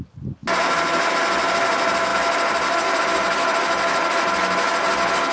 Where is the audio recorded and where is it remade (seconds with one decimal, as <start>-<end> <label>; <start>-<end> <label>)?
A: 0.0-5.3 recorded